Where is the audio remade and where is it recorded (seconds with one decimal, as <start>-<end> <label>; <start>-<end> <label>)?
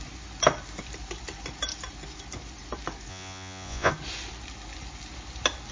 0.0-3.1 recorded; 3.1-3.9 remade; 3.9-5.7 recorded